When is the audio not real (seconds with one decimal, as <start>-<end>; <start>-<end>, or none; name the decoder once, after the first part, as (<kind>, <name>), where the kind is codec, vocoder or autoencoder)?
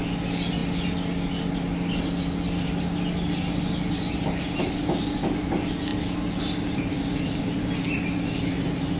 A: none